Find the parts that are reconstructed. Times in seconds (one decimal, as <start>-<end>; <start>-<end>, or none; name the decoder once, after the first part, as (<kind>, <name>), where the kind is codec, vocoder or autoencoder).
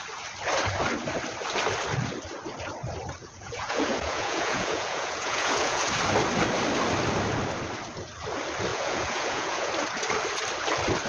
3.2-5.9 (vocoder, Vocos); 8.7-9.7